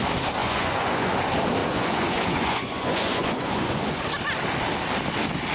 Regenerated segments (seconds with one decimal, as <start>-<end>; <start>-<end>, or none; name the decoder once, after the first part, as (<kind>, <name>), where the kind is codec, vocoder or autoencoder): 0.4-1.1 (vocoder, Vocos); 1.6-4.0